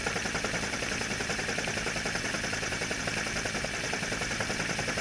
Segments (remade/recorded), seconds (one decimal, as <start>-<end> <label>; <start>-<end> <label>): 0.0-3.0 remade; 3.0-5.0 recorded

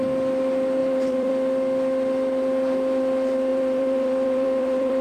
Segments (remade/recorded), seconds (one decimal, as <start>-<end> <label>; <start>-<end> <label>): 0.0-0.8 recorded; 0.8-1.3 remade; 1.3-3.5 recorded; 3.5-5.0 remade

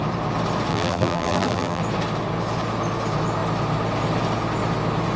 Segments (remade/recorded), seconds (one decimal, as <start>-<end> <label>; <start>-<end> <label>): 0.0-0.7 recorded; 0.7-1.8 remade; 1.8-5.2 recorded